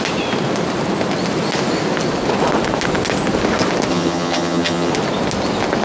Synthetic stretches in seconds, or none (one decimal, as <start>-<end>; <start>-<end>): 3.9-4.9